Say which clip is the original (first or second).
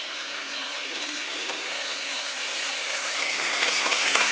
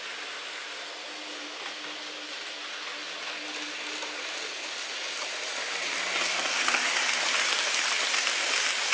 second